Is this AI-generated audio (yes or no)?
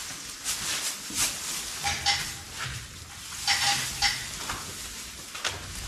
no